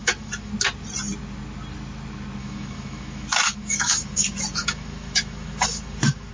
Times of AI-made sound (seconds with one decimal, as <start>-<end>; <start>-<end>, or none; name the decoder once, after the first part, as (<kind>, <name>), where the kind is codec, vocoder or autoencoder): 0.0-0.5 (autoencoder, DAC-VAE); 2.4-6.3

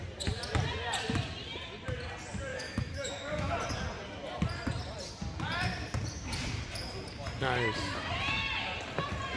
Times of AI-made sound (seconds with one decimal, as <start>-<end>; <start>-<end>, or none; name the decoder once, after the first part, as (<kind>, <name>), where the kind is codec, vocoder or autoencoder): 2.5-3.5 (autoencoder, DAC-VAE)

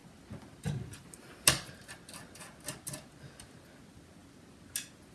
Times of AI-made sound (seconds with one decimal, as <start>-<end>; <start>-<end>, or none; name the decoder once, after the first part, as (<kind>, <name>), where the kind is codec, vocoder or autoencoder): none

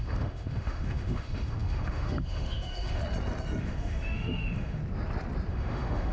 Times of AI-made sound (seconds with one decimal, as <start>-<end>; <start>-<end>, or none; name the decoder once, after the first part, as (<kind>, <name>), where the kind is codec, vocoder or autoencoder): 0.0-3.0 (autoencoder, DAC-VAE); 3.6-4.8; 5.5-6.1

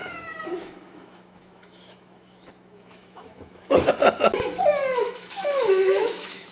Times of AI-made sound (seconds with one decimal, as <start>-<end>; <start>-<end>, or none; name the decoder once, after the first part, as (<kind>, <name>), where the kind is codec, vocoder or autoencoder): 0.0-3.9 (autoencoder, DAC-VAE); 5.0-6.5